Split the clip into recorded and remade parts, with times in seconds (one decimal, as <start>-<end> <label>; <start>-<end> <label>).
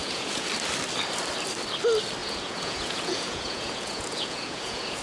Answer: 0.0-0.5 remade; 0.5-2.2 recorded; 2.2-5.0 remade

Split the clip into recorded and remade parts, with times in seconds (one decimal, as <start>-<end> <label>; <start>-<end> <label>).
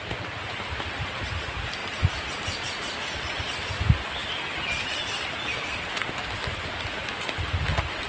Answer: 0.0-8.1 recorded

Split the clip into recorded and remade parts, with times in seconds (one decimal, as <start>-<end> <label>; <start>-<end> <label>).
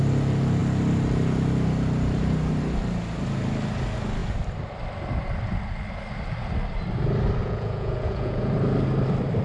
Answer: 0.0-7.4 recorded; 7.4-8.5 remade; 8.5-9.4 recorded